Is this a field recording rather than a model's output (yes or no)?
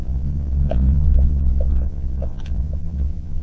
no